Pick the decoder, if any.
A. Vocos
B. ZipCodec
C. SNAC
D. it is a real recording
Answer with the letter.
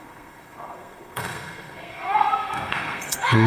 C